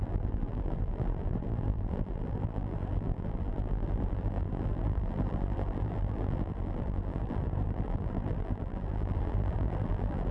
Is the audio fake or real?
fake